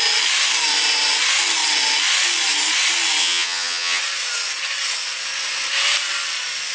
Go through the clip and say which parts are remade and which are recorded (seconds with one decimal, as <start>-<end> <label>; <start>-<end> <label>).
0.0-3.2 recorded; 3.2-4.0 remade; 4.0-6.7 recorded